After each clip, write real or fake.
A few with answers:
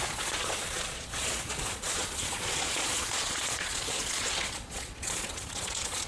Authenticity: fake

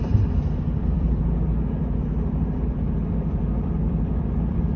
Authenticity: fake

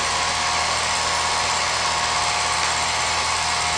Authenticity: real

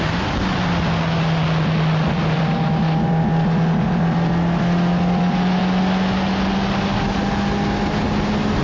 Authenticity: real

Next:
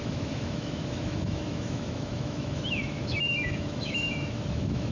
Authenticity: fake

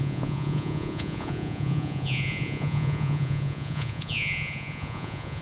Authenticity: fake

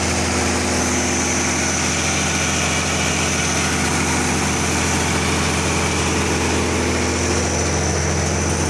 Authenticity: real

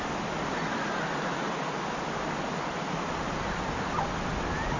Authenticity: real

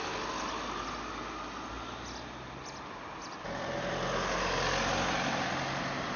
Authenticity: real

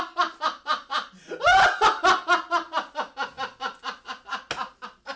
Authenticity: real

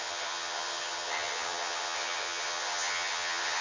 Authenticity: fake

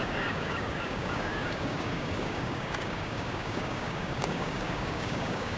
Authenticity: fake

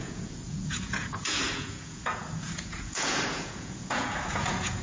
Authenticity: fake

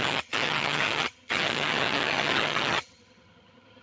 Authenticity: fake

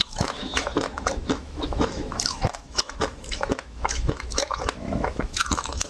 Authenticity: fake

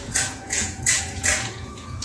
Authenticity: fake